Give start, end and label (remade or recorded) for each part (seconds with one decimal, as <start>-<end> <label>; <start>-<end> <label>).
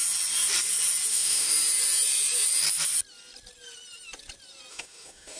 0.0-1.1 recorded; 1.1-1.5 remade; 1.5-4.7 recorded; 4.7-5.4 remade